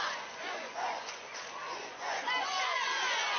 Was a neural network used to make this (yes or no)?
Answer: yes